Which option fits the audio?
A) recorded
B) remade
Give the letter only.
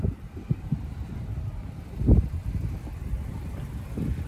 A